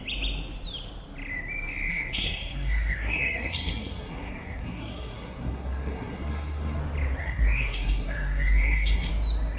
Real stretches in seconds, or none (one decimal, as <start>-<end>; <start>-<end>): 0.0-1.9; 6.8-7.2; 9.1-9.6